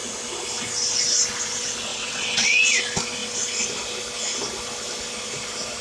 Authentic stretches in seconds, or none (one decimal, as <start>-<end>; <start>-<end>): 0.0-1.9; 2.8-5.8